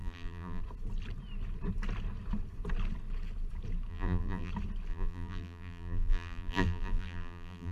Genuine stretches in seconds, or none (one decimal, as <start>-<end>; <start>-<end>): 0.6-3.9; 4.5-4.9